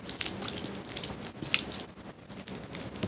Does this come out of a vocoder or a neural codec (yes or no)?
no